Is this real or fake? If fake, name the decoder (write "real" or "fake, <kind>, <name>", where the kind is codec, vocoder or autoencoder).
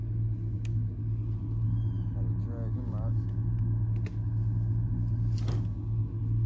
real